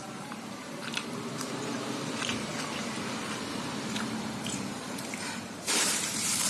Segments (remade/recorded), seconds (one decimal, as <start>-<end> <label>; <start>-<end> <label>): 0.0-2.5 remade; 2.5-3.2 recorded; 3.2-6.5 remade